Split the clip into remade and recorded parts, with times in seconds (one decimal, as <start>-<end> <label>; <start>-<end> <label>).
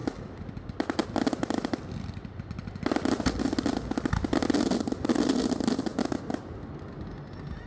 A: 0.0-7.7 recorded